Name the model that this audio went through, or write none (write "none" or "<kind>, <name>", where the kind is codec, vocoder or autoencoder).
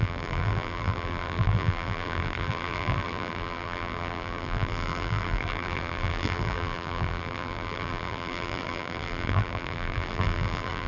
vocoder, BigVGAN v2